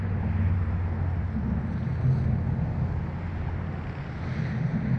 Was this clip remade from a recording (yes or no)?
no